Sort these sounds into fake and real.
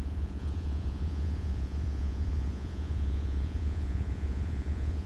fake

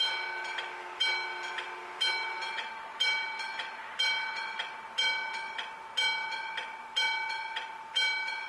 real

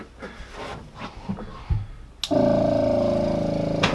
real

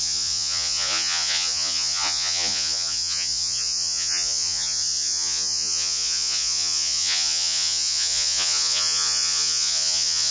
fake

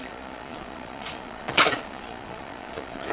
fake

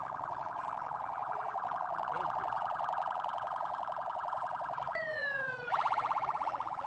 fake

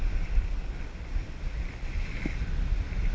real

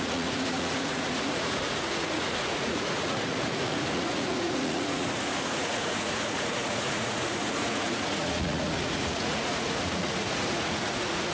fake